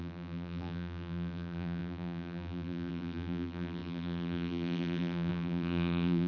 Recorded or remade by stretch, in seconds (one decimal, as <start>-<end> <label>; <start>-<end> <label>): 0.0-6.3 remade